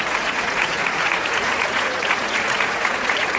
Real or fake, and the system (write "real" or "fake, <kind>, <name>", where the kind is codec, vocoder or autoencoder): fake, vocoder, Vocos